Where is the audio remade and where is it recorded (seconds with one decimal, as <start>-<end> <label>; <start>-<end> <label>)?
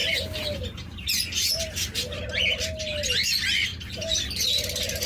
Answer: 0.0-5.1 recorded